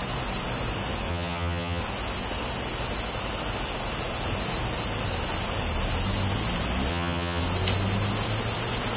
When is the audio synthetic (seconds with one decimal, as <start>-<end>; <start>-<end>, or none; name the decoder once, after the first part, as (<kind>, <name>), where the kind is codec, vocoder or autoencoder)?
1.1-1.8 (vocoder, HiFi-GAN); 6.9-7.4